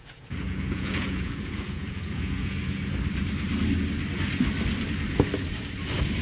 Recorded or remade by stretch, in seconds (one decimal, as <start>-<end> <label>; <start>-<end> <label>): 0.0-2.8 remade; 2.8-6.2 recorded